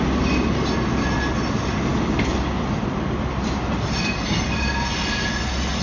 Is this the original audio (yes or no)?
yes